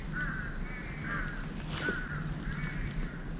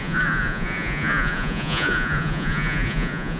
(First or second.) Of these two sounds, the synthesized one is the second